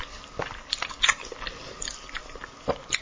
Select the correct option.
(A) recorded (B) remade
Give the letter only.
A